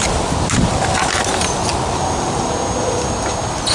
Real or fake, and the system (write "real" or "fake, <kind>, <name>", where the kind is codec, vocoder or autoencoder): real